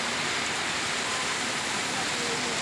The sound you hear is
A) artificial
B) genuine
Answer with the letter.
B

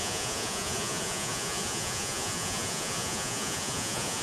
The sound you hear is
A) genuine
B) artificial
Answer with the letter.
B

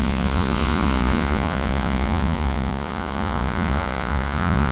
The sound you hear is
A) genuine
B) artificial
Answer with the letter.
B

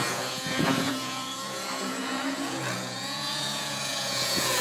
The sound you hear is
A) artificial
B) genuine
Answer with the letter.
A